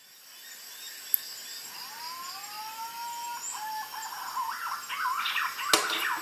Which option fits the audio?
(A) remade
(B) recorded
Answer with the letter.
B